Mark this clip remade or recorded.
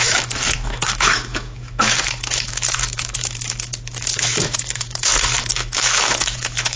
remade